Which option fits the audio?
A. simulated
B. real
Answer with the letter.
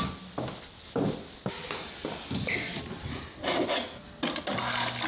B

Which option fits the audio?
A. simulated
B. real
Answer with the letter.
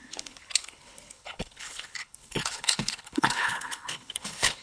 A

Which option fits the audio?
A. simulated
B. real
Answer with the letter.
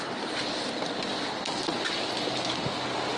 B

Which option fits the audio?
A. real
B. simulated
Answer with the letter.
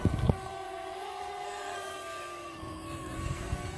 B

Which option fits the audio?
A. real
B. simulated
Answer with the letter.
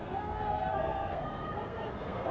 B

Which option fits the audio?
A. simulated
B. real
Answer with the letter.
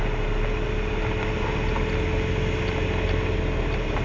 B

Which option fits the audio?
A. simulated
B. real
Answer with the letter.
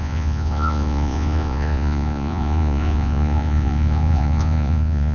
A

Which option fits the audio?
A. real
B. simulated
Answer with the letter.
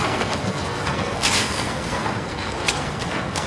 B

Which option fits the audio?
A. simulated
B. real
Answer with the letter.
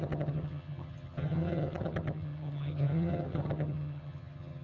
A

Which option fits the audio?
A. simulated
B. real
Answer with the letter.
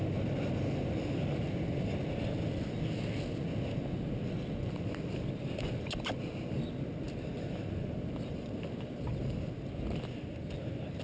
B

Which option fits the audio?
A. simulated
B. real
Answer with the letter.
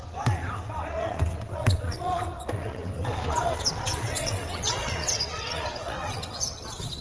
A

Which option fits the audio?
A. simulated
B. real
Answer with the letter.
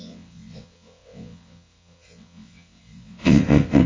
A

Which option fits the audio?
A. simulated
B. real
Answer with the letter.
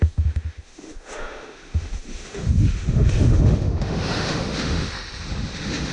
A